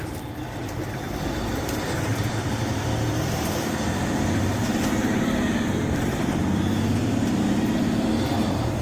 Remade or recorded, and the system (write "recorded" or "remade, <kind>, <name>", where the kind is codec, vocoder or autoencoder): remade, vocoder, BigVGAN v2